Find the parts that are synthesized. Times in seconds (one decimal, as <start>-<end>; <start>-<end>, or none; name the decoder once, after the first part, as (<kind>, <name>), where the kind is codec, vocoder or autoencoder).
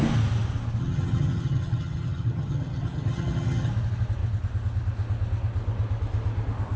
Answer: 0.8-3.7 (vocoder, HiFi-GAN)